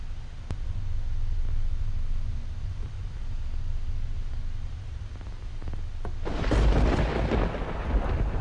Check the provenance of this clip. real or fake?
real